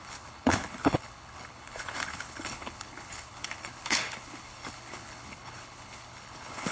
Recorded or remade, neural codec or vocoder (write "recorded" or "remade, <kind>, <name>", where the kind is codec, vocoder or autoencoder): remade, codec, HILCodec